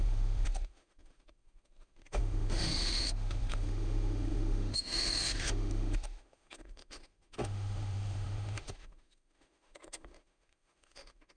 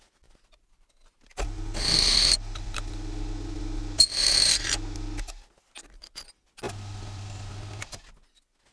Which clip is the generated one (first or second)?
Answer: first